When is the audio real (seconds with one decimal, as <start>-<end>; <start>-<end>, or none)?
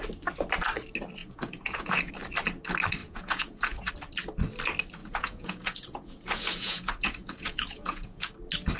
0.0-1.2; 2.1-3.0; 3.9-5.0; 8.3-8.8